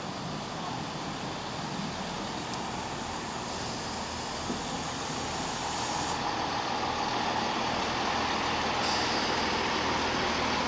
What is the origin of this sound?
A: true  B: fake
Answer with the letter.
A